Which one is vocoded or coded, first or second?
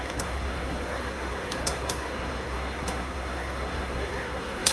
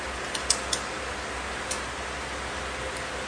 first